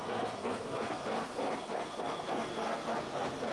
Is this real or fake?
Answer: fake